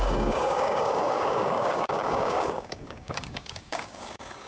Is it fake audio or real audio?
fake